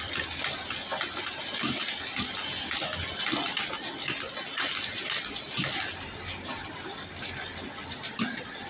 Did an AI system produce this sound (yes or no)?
no